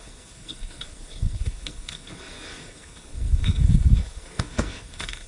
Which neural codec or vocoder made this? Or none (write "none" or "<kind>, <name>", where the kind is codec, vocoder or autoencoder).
codec, SNAC